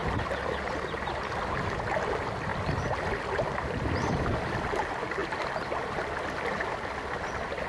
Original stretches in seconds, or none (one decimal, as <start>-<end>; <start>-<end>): 0.0-7.7